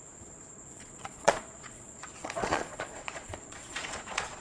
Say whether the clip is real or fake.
fake